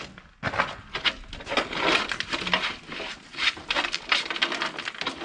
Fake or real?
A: real